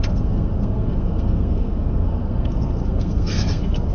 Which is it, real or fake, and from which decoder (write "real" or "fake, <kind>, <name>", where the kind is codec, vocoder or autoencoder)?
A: fake, codec, SNAC